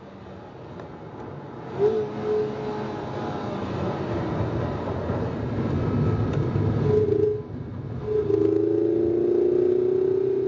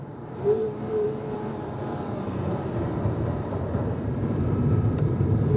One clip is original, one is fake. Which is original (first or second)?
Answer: first